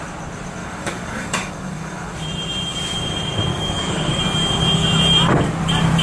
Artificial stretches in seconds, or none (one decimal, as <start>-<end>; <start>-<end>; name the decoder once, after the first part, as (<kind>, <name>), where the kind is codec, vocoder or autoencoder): 0.6-2.1 (codec, DAC); 3.5-4.2